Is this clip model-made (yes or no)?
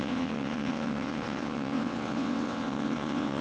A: yes